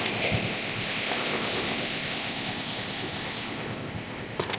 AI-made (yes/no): yes